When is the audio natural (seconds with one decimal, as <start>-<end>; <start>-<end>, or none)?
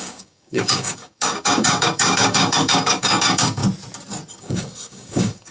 3.6-4.4